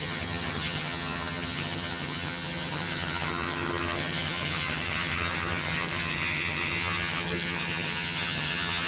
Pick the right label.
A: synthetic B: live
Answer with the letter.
A